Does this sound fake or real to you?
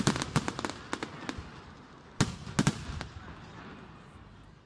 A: real